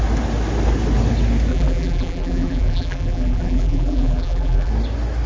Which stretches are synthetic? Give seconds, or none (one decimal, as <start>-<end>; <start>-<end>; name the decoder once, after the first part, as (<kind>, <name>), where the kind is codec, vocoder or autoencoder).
1.5-4.7 (vocoder, BigVGAN v2)